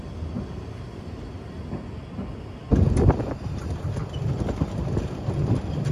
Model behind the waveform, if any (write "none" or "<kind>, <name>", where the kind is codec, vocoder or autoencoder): none